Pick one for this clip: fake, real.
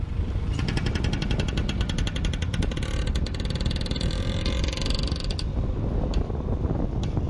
real